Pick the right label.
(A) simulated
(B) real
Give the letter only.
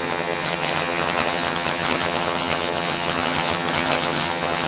A